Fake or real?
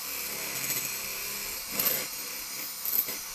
real